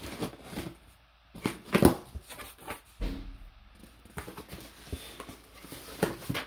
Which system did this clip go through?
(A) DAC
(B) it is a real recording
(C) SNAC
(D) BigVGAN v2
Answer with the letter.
B